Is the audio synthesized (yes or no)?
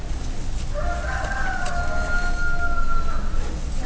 no